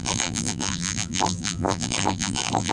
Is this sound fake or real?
fake